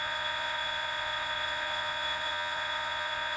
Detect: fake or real fake